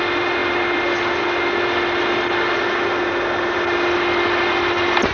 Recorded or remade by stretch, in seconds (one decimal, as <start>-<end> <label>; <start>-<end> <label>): 0.0-5.1 recorded